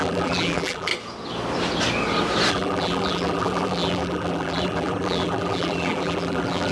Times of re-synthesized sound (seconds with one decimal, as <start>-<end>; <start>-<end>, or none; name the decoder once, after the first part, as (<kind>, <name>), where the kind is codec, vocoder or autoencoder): 0.0-0.9 (vocoder, BigVGAN v2); 2.5-6.7

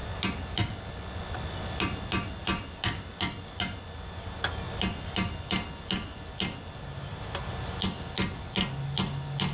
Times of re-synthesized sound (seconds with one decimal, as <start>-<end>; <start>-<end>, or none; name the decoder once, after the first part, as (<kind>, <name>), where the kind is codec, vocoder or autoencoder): none

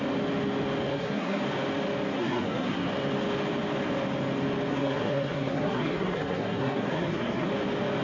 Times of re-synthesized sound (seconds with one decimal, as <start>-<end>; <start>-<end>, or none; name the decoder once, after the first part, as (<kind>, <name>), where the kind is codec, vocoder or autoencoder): 0.9-1.4 (codec, SNAC); 2.1-2.9; 4.7-7.5

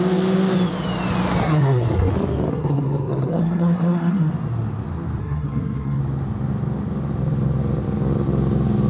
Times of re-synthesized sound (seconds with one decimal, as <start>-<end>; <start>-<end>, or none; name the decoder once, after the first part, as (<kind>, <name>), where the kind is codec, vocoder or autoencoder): 1.4-2.1 (codec, SNAC); 2.5-4.3; 5.2-6.0

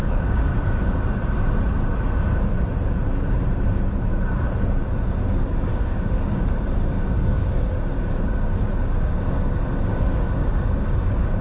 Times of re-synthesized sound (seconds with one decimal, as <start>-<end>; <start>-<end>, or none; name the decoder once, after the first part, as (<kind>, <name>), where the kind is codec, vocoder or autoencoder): 0.0-0.5 (codec, DAC); 5.2-11.4

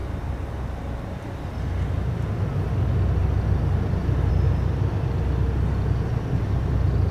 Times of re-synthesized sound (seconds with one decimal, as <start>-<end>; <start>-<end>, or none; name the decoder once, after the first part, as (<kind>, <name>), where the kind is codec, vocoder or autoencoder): none

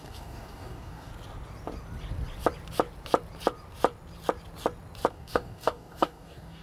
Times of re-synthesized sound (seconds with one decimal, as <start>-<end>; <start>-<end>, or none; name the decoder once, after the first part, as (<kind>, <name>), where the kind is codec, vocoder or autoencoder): 0.0-1.1 (codec, DAC); 5.1-6.6